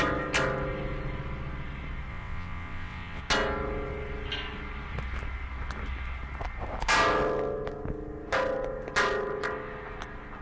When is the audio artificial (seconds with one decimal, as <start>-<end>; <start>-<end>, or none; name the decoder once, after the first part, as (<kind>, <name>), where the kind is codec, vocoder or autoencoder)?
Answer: 2.1-3.2 (vocoder, WaveNeXt)